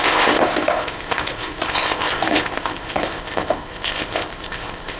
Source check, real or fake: fake